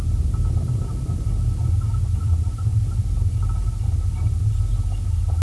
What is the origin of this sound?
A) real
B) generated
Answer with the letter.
A